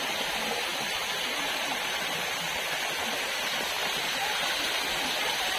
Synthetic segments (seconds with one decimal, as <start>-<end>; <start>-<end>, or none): none

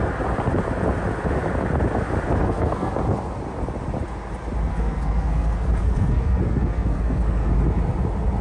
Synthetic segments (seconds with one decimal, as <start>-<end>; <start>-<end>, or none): 2.4-2.9; 4.7-7.5

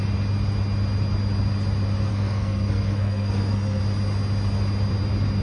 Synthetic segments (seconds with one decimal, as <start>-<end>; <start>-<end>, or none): 2.1-3.8

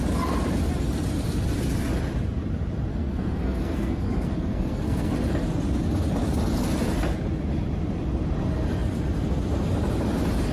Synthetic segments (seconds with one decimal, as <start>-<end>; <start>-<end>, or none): 2.9-5.1